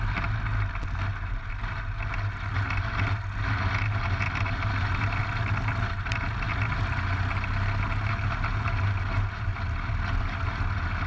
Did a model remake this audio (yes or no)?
no